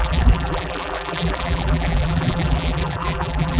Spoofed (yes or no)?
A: yes